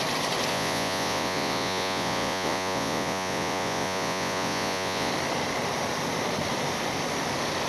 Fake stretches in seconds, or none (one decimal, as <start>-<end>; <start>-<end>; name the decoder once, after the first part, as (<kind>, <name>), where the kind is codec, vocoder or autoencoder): 0.5-5.1 (vocoder, Vocos)